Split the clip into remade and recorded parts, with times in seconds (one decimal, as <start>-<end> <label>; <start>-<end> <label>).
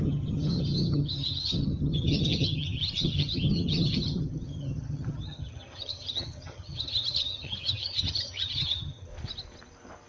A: 0.0-9.1 remade; 9.1-10.1 recorded